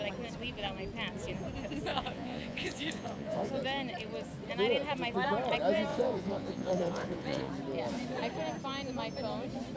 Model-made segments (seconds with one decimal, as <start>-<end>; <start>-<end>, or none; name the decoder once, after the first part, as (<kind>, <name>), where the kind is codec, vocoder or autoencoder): 1.9-3.5 (vocoder, Vocos); 5.9-7.5